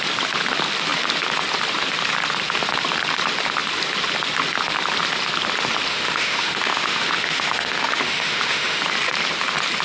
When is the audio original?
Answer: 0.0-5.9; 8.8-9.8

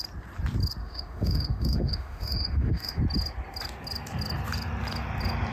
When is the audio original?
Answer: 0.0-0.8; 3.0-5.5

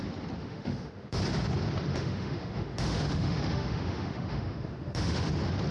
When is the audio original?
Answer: 0.0-0.4; 1.2-1.9; 5.3-5.7

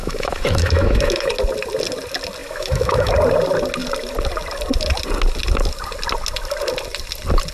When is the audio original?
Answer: 1.3-2.4; 3.1-7.5

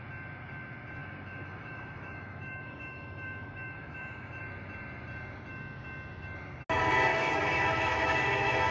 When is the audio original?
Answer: 0.0-1.0; 4.4-7.1

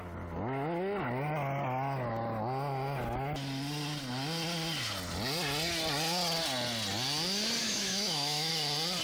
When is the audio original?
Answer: 0.0-7.6; 8.5-9.0

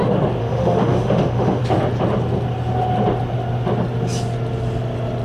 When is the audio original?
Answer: 0.0-0.4; 1.6-5.2

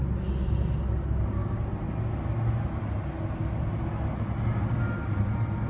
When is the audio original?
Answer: 0.0-5.7